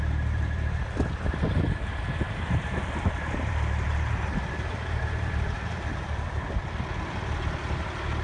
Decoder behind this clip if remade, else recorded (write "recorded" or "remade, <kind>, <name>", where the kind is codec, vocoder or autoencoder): remade, vocoder, BigVGAN v2